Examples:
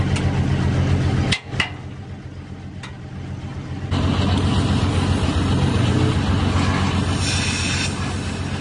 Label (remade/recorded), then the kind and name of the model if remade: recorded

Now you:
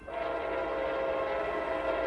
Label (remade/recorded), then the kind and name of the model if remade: recorded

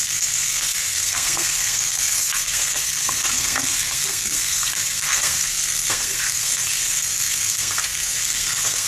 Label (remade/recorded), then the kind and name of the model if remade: remade, codec, SNAC